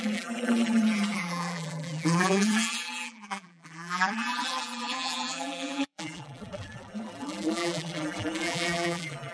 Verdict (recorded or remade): remade